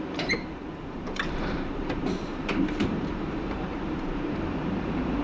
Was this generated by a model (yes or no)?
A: yes